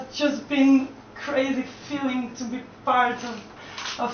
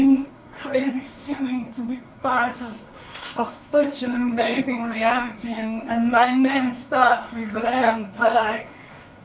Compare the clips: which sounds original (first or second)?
first